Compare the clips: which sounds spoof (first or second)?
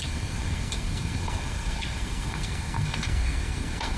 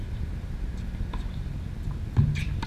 first